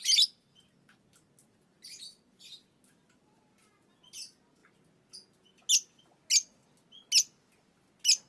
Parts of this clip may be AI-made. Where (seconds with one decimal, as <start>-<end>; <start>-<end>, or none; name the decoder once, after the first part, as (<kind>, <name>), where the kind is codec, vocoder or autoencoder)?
none